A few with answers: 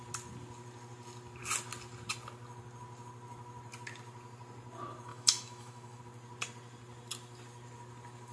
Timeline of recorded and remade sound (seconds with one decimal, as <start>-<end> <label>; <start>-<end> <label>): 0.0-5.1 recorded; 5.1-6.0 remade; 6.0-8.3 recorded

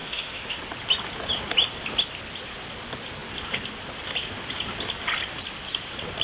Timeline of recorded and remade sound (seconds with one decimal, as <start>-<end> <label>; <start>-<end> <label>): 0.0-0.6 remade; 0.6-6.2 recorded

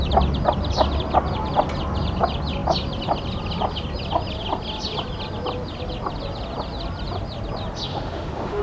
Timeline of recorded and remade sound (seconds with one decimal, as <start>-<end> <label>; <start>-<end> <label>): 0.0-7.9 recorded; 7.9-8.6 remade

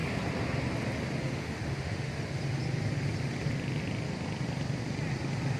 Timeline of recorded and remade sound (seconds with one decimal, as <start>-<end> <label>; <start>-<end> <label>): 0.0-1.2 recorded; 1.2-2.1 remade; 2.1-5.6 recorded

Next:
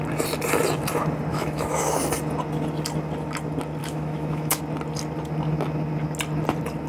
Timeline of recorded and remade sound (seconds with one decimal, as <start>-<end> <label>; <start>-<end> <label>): 0.0-1.3 recorded; 1.3-1.8 remade; 1.8-3.8 recorded; 3.8-4.6 remade; 4.6-6.9 recorded

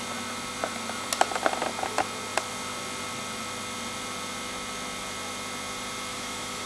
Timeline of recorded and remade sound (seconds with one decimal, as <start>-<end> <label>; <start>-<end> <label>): 0.0-6.1 recorded; 6.1-6.7 remade

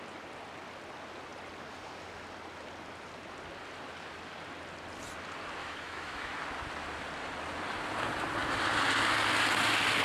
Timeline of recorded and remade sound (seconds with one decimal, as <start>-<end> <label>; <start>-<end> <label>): 0.0-5.6 recorded; 5.6-6.3 remade; 6.3-10.0 recorded

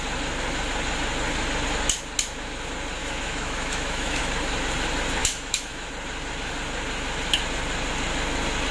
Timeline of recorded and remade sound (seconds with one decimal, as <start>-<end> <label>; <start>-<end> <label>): 0.0-3.0 recorded; 3.0-4.2 remade; 4.2-5.2 recorded; 5.2-5.9 remade; 5.9-8.7 recorded